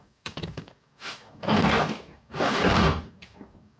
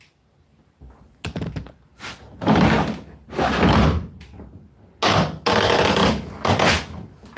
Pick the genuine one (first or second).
second